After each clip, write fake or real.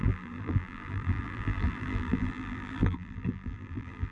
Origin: fake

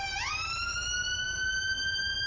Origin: real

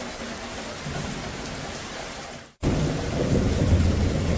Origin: real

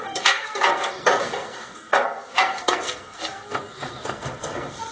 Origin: fake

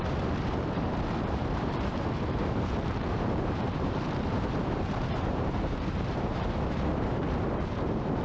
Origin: fake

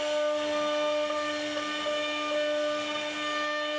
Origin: real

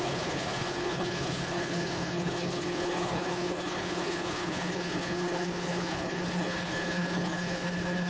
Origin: fake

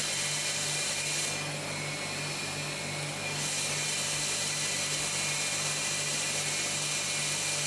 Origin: real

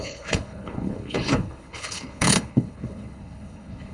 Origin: fake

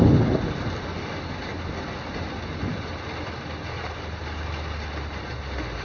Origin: real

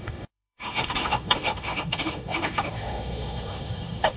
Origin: fake